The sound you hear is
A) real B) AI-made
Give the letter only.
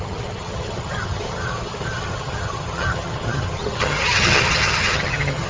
B